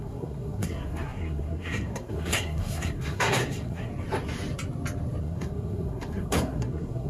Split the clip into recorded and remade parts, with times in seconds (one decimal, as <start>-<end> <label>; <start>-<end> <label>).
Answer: 0.0-3.9 remade; 3.9-5.2 recorded; 5.2-7.1 remade